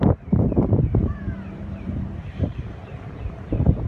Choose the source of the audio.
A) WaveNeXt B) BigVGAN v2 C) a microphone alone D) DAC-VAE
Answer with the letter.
B